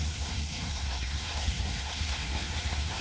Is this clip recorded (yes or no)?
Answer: no